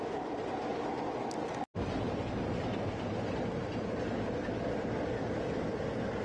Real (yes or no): yes